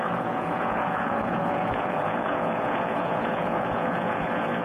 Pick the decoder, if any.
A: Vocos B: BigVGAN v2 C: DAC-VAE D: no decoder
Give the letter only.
A